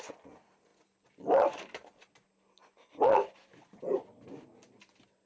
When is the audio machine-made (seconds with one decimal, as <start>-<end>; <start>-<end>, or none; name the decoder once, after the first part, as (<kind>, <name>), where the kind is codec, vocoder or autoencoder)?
none